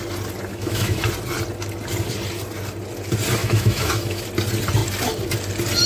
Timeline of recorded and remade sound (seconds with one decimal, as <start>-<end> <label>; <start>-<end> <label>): 0.0-0.5 recorded; 0.5-1.1 remade; 1.1-3.4 recorded; 3.4-4.2 remade; 4.2-5.9 recorded